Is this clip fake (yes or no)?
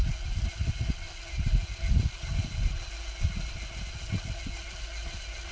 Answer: no